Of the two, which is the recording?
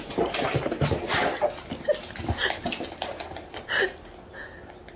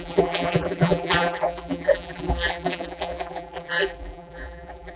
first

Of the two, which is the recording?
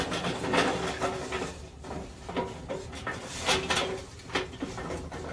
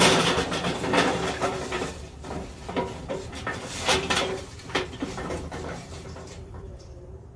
first